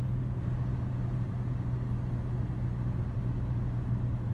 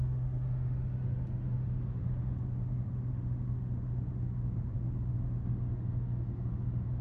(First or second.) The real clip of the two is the first